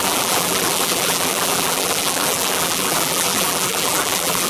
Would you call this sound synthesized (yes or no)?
yes